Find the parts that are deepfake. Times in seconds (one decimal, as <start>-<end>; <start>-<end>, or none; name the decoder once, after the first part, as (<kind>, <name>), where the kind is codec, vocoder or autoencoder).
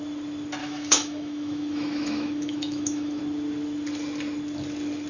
0.6-3.2 (autoencoder, DAC-VAE)